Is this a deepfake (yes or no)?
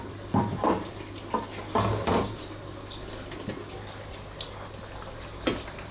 no